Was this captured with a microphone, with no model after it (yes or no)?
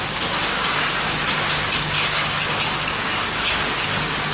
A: no